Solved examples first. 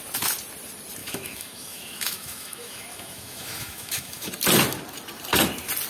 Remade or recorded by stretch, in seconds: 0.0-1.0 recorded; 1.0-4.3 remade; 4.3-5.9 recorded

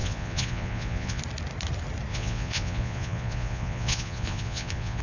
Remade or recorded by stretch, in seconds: 0.0-1.2 remade; 1.2-2.1 recorded; 2.1-5.0 remade

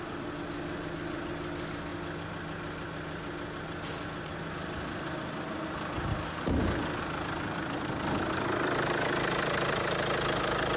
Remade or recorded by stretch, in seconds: 0.0-1.9 remade; 1.9-7.0 recorded; 7.0-10.8 remade

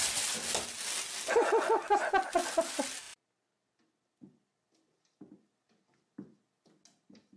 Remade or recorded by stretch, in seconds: 0.0-7.4 recorded